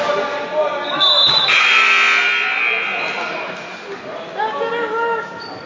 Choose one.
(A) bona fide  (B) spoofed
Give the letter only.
A